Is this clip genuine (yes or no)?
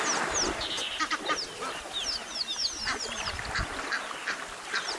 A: yes